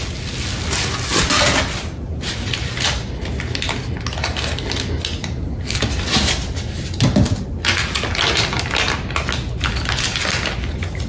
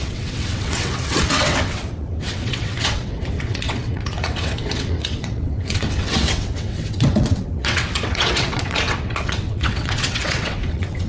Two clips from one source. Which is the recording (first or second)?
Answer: first